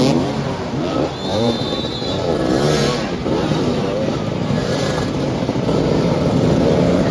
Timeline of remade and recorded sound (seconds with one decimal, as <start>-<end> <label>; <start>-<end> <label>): 0.0-1.3 recorded; 1.3-2.5 remade; 2.5-3.2 recorded; 3.2-7.1 remade